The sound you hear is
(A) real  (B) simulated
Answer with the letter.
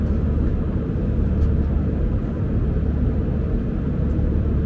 A